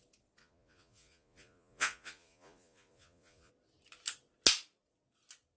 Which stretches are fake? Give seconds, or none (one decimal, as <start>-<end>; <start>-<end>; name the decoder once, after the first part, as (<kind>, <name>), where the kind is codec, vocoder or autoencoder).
0.4-3.5 (vocoder, Vocos)